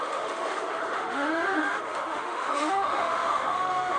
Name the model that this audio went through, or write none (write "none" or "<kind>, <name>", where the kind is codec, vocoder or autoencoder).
autoencoder, DAC-VAE